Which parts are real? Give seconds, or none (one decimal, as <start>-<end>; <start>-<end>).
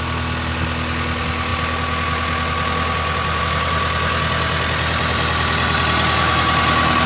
0.0-7.1